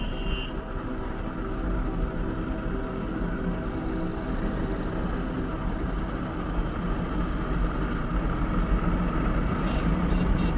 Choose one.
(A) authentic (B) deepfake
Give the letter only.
A